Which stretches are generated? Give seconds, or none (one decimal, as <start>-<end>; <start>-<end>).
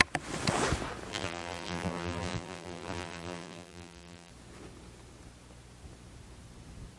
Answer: 1.1-4.3